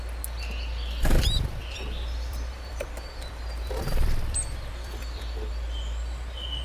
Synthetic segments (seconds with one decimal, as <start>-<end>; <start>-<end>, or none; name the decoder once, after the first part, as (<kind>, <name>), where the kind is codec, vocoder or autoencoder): 1.6-5.2 (vocoder, BigVGAN v2)